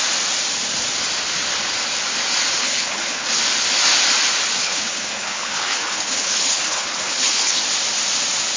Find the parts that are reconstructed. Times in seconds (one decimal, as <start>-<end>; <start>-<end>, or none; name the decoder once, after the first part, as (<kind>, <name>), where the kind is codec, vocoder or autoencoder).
2.6-3.4 (codec, HILCodec); 4.6-7.6